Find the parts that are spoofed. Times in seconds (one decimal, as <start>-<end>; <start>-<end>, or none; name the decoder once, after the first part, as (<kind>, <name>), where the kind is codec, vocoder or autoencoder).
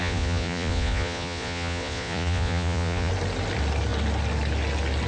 0.0-3.1 (vocoder, Vocos)